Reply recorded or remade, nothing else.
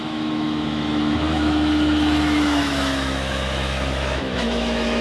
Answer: remade